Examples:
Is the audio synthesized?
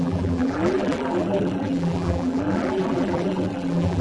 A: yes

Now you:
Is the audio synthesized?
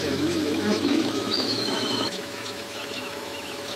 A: yes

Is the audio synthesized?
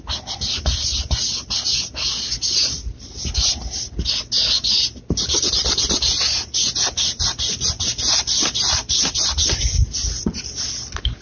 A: no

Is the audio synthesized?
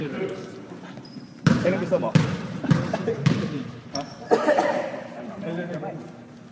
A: yes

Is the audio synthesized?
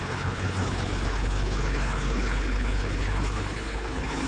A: yes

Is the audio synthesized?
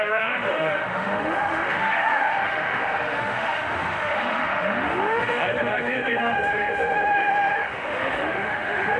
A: yes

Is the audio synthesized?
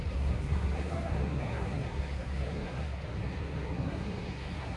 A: yes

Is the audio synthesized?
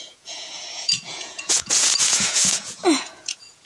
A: yes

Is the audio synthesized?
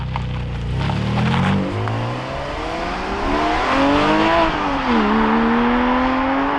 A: no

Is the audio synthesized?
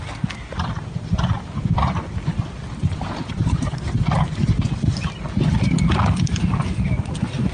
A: no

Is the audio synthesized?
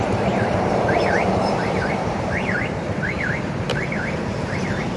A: yes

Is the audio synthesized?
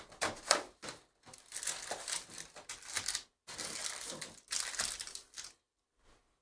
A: no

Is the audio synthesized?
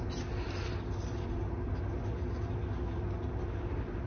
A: no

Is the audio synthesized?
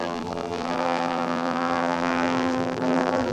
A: yes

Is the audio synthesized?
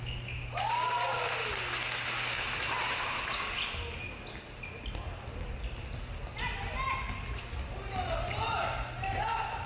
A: no